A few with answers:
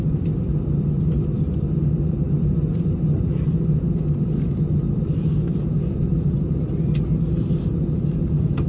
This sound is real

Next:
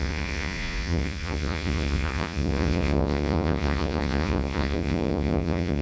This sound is fake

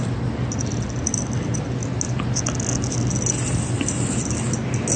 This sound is real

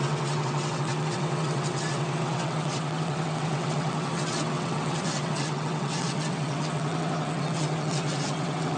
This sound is fake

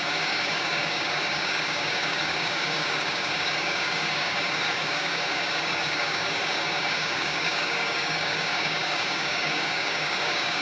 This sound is fake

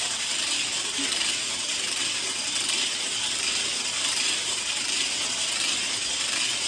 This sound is real